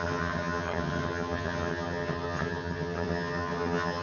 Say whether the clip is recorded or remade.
remade